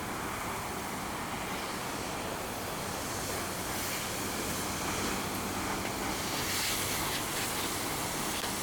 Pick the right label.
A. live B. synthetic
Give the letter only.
A